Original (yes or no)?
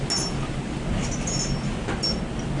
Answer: yes